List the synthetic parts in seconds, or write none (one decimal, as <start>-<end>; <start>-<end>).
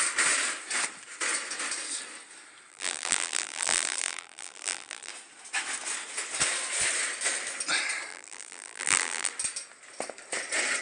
2.7-5.1; 8.1-9.3